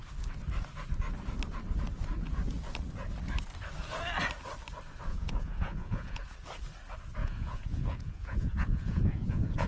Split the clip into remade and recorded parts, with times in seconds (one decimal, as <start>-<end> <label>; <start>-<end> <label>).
0.0-5.1 recorded; 5.1-6.2 remade; 6.2-7.2 recorded; 7.2-9.7 remade

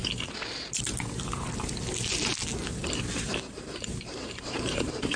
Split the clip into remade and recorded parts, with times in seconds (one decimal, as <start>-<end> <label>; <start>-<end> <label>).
0.0-3.1 recorded; 3.1-5.2 remade

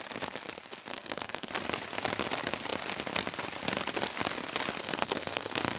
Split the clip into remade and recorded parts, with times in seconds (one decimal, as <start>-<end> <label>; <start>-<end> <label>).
0.0-0.9 recorded; 0.9-1.5 remade; 1.5-4.8 recorded; 4.8-5.8 remade

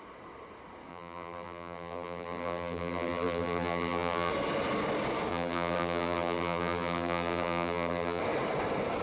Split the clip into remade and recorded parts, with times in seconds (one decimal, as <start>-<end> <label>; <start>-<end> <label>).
0.0-0.9 recorded; 0.9-4.3 remade; 4.3-5.3 recorded; 5.3-8.2 remade; 8.2-9.0 recorded

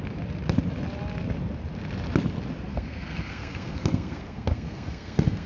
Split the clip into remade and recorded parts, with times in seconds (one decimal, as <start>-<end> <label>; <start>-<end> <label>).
0.0-2.7 recorded; 2.7-5.5 remade

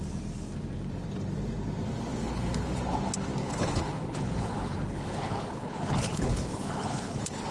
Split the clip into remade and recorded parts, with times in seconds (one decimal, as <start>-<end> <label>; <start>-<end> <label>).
0.0-2.1 recorded; 2.1-2.8 remade; 2.8-3.4 recorded; 3.4-7.5 remade